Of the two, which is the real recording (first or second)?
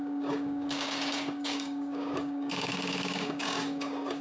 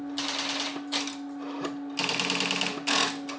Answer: second